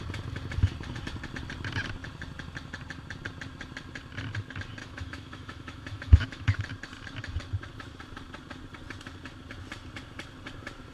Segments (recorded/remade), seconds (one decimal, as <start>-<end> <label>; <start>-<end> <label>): 0.0-4.8 recorded; 4.8-6.6 remade; 6.6-10.9 recorded

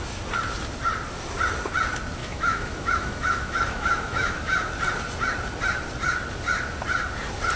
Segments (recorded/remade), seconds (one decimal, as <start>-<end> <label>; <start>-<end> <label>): 0.0-2.2 recorded; 2.2-4.7 remade; 4.7-7.6 recorded

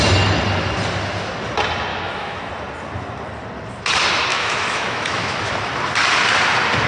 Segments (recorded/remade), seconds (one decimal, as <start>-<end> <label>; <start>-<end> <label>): 0.0-1.9 recorded; 1.9-2.5 remade; 2.5-4.3 recorded; 4.3-5.5 remade; 5.5-6.9 recorded

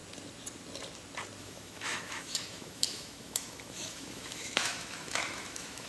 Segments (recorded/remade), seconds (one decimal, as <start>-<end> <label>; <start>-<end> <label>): 0.0-1.4 recorded; 1.4-5.9 remade

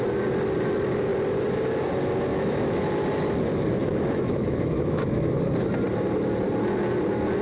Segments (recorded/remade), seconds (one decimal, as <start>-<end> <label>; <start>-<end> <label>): 0.0-2.3 recorded; 2.3-2.8 remade; 2.8-3.8 recorded; 3.8-5.3 remade; 5.3-7.4 recorded

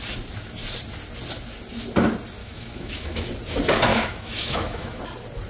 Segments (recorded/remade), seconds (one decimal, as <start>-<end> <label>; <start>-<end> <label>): 0.0-2.4 recorded; 2.4-3.3 remade; 3.3-3.9 recorded; 3.9-5.0 remade; 5.0-5.5 recorded

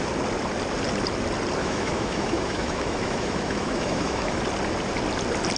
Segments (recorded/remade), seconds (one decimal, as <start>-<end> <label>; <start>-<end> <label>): 0.0-1.6 recorded; 1.6-4.4 remade; 4.4-5.6 recorded